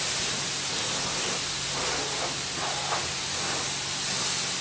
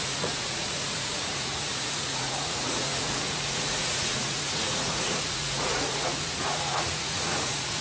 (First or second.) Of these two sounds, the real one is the first